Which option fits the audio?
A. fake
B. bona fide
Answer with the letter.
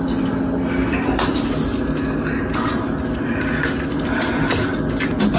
B